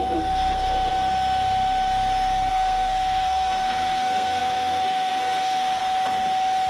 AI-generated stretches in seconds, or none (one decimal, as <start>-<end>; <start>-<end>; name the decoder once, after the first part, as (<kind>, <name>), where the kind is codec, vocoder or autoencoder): 0.0-0.9 (codec, SNAC); 2.5-5.8